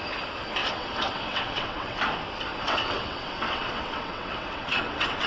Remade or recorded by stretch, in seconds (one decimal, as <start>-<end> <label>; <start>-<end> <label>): 0.0-0.6 recorded; 0.6-2.0 remade; 2.0-2.5 recorded; 2.5-5.3 remade